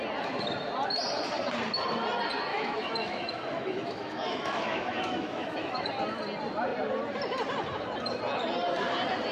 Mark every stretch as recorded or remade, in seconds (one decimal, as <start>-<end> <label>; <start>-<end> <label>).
0.0-2.5 recorded; 2.5-5.9 remade; 5.9-9.3 recorded